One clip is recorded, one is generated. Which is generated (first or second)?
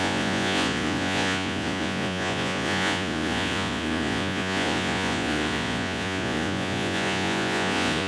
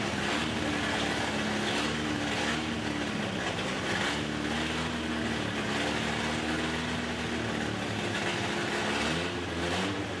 first